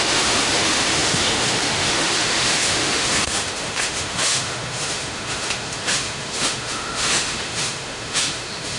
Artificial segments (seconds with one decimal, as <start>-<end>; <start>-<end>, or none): 0.0-8.8